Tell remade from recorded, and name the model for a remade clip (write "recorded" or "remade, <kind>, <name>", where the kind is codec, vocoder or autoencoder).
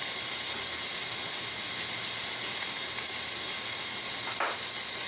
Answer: recorded